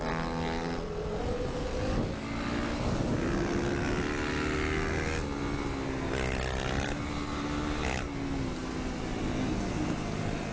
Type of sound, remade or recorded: recorded